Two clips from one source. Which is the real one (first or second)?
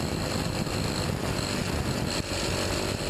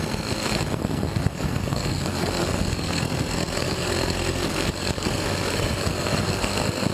first